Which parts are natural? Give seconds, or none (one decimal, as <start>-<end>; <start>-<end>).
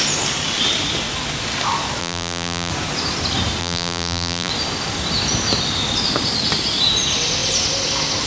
0.0-2.0; 2.7-3.6; 4.5-8.3